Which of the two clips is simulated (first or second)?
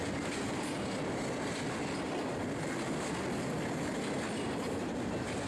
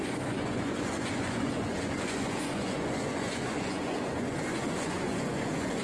second